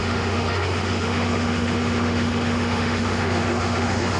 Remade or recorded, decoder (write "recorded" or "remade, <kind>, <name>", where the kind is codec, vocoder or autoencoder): remade, autoencoder, DAC-VAE